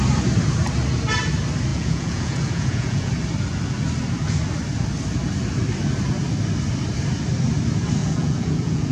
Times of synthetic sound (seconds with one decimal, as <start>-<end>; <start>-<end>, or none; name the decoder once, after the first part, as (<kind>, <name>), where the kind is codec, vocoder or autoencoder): 1.7-3.1 (vocoder, Vocos); 8.0-8.9